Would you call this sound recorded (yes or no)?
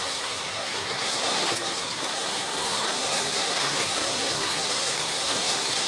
no